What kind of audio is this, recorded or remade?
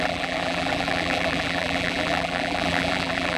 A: remade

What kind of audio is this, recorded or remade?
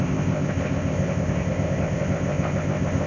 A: remade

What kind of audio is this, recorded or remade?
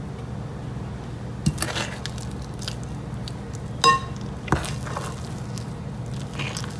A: recorded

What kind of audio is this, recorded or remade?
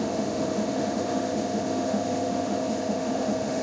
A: remade